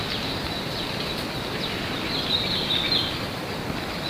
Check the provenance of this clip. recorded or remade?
recorded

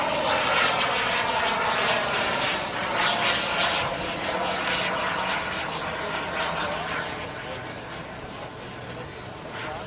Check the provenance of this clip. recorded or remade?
recorded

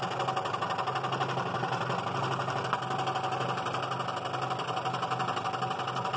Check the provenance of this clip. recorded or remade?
recorded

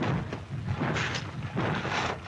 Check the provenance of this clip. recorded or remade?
recorded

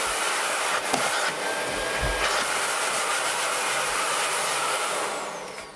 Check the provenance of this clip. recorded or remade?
recorded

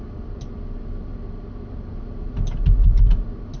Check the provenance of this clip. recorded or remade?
recorded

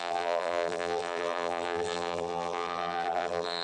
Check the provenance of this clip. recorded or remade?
remade